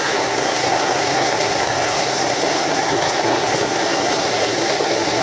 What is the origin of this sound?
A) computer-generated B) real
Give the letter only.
A